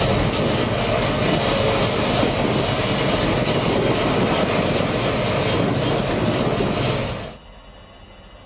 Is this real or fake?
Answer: real